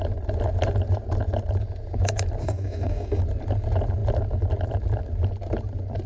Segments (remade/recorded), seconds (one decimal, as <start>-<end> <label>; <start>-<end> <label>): 0.0-2.4 recorded; 2.4-3.2 remade; 3.2-6.1 recorded